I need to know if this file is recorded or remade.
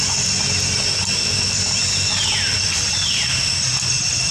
recorded